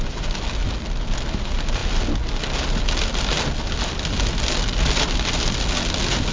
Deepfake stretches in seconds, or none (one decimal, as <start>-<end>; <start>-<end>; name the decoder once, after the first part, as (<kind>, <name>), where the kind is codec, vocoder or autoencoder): none